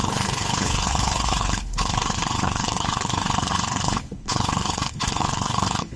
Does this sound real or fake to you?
fake